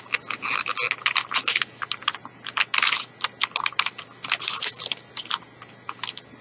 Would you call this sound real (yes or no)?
yes